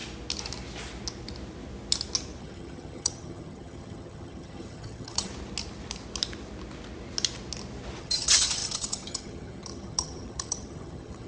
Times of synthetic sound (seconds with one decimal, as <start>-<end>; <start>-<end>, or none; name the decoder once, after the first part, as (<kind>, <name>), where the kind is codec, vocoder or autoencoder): 2.4-5.3 (vocoder, HiFi-GAN); 8.0-11.3